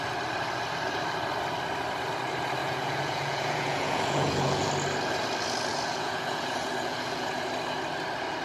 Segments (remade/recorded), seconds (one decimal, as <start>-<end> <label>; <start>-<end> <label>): 0.0-2.6 recorded; 2.6-4.7 remade; 4.7-5.7 recorded; 5.7-7.4 remade; 7.4-8.4 recorded